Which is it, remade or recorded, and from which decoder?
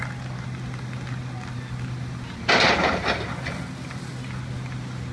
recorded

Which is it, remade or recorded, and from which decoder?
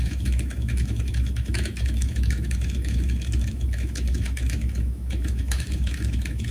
remade, autoencoder, DAC-VAE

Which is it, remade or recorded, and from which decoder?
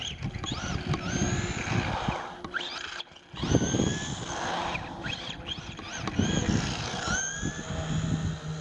recorded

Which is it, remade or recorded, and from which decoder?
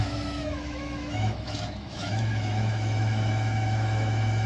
remade, autoencoder, DAC-VAE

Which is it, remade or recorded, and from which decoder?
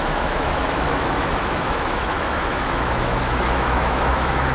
remade, autoencoder, DAC-VAE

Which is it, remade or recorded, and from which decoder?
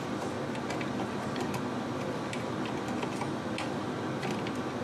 recorded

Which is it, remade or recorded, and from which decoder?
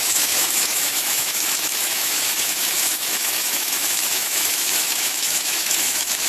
remade, autoencoder, DAC-VAE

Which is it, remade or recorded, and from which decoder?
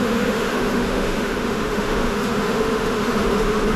remade, autoencoder, DAC-VAE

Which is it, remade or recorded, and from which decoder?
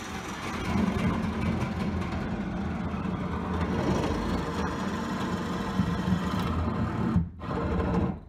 recorded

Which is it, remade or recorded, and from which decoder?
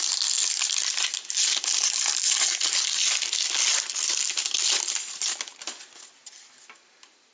recorded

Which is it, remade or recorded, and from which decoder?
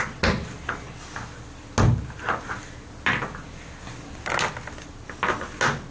recorded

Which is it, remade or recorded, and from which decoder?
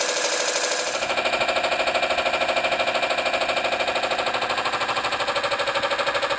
recorded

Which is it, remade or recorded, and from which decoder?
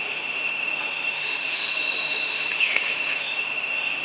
remade, autoencoder, DAC-VAE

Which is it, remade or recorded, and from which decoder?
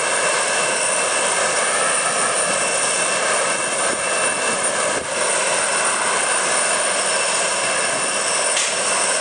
recorded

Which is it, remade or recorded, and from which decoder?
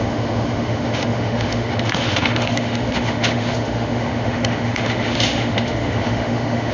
remade, autoencoder, DAC-VAE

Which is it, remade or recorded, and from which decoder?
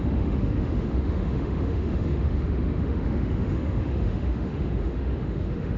remade, autoencoder, DAC-VAE